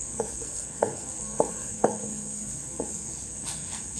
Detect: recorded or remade remade